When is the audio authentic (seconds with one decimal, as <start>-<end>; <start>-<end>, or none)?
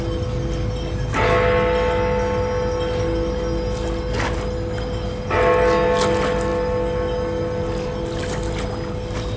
0.0-9.4